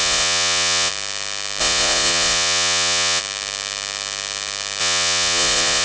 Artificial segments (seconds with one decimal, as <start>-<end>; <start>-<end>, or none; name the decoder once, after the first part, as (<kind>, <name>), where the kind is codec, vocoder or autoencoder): 0.0-0.9 (vocoder, Vocos); 1.6-3.2; 4.8-5.8